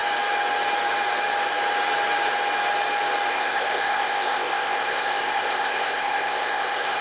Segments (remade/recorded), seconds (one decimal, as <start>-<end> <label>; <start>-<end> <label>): 0.0-3.3 recorded; 3.3-7.0 remade